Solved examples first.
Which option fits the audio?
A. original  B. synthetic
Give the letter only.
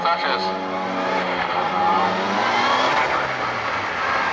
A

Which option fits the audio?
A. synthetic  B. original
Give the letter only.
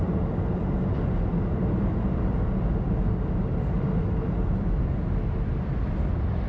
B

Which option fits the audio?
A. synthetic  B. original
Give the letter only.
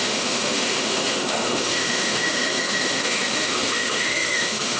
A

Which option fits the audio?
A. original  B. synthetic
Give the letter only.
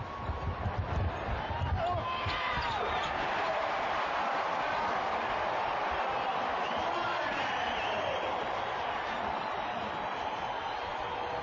A